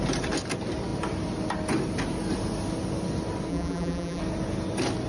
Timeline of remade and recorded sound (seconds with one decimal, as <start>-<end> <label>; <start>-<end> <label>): 0.0-3.5 recorded; 3.5-4.2 remade; 4.2-5.1 recorded